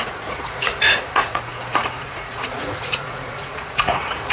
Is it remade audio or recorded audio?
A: remade